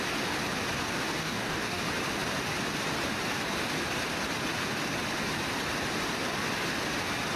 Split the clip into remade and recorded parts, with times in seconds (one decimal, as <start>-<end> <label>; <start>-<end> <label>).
0.0-1.2 recorded; 1.2-1.8 remade; 1.8-7.4 recorded